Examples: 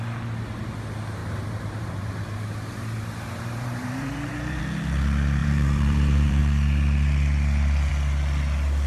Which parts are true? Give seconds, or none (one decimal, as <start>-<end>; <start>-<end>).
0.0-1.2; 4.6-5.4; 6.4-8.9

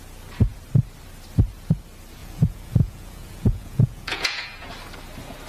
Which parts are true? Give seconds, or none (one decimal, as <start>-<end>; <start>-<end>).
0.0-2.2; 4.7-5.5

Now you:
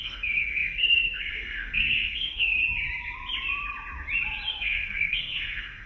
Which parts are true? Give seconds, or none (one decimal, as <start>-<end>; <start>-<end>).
2.6-4.5